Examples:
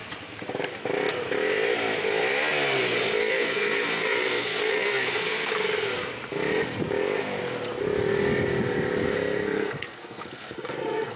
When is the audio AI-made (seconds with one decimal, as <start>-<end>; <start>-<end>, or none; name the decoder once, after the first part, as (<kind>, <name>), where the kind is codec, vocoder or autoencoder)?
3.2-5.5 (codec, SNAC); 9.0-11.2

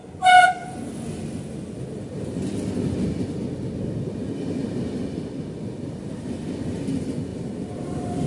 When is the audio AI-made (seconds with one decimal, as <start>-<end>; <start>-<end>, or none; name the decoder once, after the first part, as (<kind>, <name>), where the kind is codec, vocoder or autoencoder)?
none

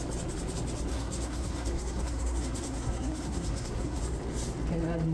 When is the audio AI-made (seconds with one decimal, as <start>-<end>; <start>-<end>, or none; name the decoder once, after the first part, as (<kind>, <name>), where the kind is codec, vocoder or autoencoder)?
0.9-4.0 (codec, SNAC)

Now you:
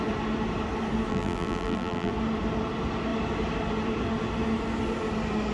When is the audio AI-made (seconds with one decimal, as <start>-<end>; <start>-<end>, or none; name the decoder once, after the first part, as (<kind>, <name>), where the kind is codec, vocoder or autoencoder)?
1.1-2.1 (vocoder, BigVGAN v2)